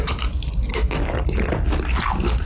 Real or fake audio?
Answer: real